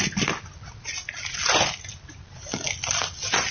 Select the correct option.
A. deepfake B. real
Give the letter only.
B